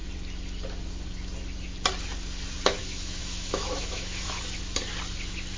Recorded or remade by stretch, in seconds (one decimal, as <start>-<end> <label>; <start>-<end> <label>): 0.0-2.8 recorded; 2.8-4.4 remade; 4.4-5.6 recorded